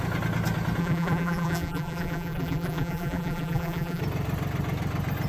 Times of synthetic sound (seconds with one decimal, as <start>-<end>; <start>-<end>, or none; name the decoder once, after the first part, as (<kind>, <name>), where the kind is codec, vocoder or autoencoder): 0.8-4.0 (vocoder, BigVGAN v2)